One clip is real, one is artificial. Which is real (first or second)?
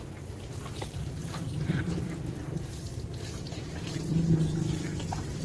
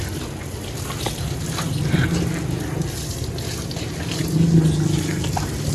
second